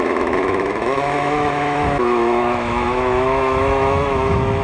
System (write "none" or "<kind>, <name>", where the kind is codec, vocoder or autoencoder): autoencoder, DAC-VAE